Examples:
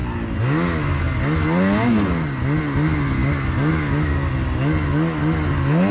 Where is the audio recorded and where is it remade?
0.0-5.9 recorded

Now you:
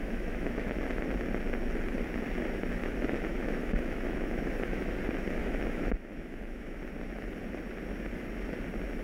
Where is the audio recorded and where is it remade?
0.0-0.8 remade; 0.8-2.8 recorded; 2.8-5.0 remade; 5.0-5.4 recorded; 5.4-6.8 remade; 6.8-9.0 recorded

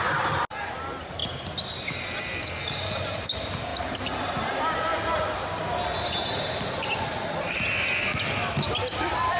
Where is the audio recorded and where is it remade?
0.0-9.4 recorded

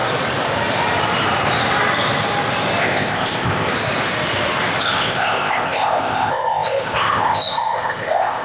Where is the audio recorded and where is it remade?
0.0-2.8 recorded; 2.8-3.7 remade; 3.7-4.8 recorded; 4.8-8.4 remade

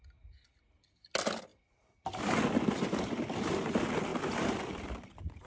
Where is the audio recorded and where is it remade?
0.0-1.5 recorded; 1.5-2.4 remade; 2.4-4.1 recorded; 4.1-5.5 remade